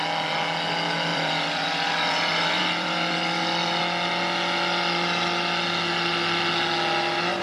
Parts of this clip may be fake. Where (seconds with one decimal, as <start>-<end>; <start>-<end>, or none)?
1.1-3.8